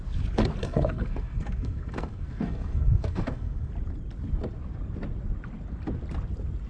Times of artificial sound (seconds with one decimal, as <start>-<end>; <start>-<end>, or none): 0.6-3.7